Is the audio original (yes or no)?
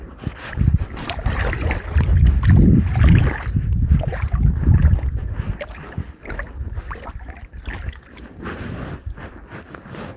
yes